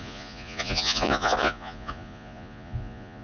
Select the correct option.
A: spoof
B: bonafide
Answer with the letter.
A